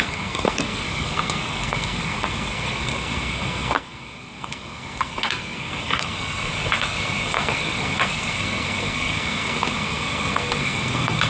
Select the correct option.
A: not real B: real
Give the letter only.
A